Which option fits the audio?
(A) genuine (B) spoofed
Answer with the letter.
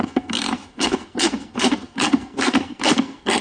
B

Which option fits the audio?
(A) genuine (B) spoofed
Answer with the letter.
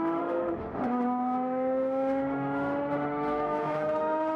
B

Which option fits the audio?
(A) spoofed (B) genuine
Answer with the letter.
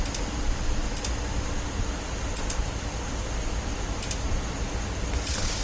B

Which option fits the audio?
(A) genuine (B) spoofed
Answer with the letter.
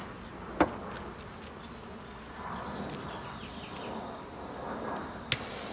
A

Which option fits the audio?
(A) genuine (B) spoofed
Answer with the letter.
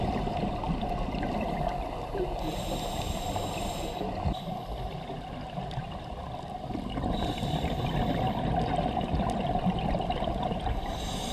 A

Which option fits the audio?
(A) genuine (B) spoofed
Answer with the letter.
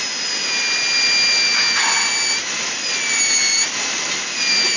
A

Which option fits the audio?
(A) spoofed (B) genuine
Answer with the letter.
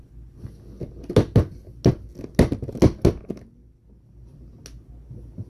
B